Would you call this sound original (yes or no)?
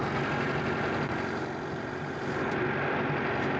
yes